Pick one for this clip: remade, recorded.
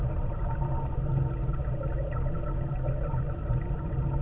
remade